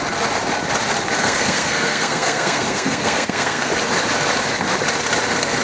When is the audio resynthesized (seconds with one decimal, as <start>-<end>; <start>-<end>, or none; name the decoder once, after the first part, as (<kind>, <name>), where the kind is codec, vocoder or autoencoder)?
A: 1.2-3.7 (codec, SNAC)